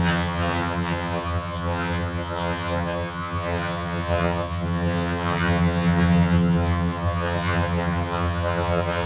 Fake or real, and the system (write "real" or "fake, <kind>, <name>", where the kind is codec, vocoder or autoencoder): fake, vocoder, HiFi-GAN